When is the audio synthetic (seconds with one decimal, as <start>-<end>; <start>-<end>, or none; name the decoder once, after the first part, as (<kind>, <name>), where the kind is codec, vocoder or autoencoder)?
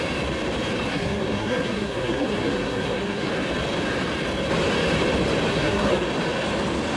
0.9-3.3 (codec, SNAC); 5.5-6.1